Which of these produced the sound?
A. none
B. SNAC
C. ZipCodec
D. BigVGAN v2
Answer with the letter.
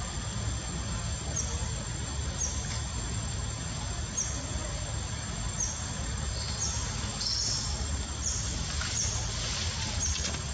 A